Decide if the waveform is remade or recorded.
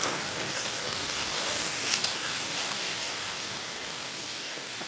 remade